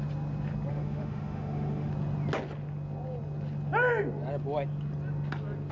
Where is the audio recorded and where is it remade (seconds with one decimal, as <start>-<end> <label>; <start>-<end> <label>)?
0.0-0.7 recorded; 0.7-1.9 remade; 1.9-5.7 recorded